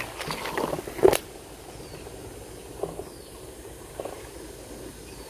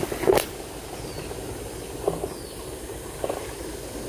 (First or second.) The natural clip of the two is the second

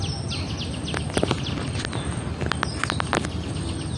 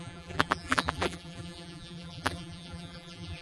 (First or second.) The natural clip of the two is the first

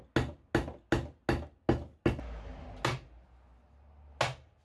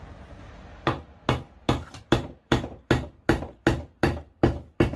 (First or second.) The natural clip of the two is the first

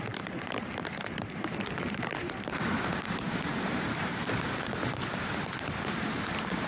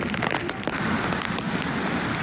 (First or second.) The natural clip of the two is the second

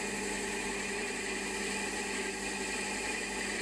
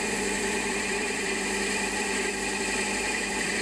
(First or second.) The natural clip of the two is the first